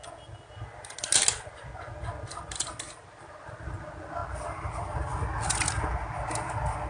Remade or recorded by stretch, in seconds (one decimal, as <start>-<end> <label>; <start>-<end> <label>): 0.0-6.9 recorded